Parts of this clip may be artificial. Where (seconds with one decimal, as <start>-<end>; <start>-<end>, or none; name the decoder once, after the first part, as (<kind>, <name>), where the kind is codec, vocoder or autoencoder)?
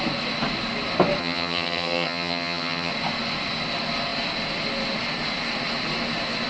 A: 1.2-2.9 (vocoder, HiFi-GAN)